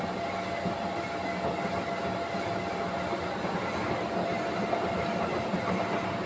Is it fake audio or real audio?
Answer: real